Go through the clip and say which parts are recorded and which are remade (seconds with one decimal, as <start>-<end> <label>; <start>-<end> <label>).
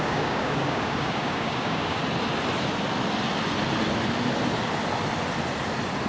0.0-2.0 remade; 2.0-6.1 recorded